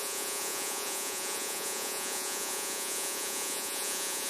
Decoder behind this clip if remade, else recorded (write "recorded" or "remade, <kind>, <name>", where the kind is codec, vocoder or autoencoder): remade, vocoder, Vocos